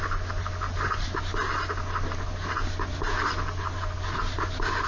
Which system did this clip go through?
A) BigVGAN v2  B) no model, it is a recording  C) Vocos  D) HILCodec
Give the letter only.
B